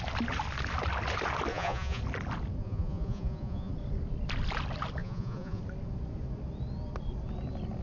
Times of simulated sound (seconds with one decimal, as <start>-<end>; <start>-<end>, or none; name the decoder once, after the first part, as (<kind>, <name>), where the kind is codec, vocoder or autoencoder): 1.5-2.0 (vocoder, Vocos); 2.6-3.7; 5.0-5.6